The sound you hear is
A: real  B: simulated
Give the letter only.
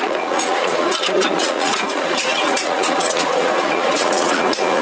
B